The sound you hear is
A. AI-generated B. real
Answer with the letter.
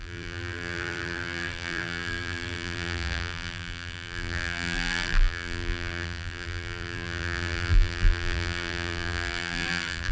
A